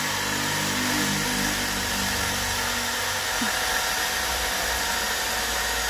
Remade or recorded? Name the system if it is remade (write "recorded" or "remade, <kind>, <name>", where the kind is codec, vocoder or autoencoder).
recorded